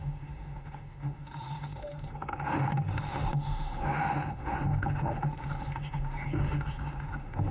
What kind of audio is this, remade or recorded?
remade